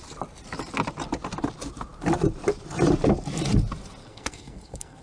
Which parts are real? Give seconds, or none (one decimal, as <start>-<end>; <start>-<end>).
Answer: 0.0-4.0